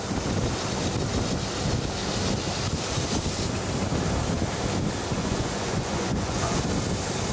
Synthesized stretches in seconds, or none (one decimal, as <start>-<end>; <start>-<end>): 5.2-6.6